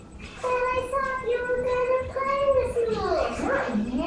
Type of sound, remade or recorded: recorded